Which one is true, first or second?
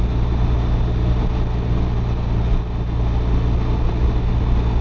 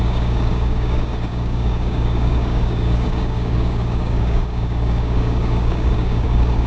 first